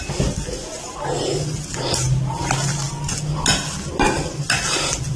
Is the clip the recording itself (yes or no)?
yes